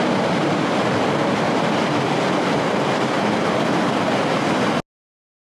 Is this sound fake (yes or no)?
no